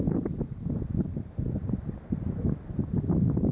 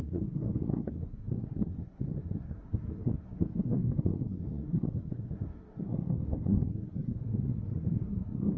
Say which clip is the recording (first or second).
first